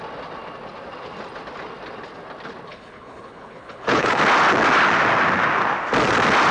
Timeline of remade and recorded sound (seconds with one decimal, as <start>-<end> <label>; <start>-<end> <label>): 0.0-2.7 recorded; 2.7-4.2 remade; 4.2-6.5 recorded